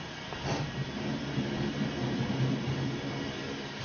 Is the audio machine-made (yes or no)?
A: no